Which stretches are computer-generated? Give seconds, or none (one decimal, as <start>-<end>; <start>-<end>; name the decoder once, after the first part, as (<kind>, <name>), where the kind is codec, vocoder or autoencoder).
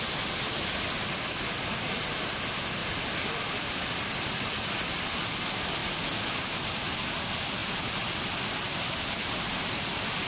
none